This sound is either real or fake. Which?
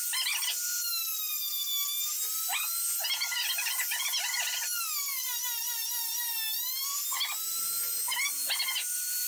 real